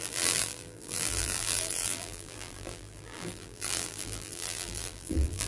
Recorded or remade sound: remade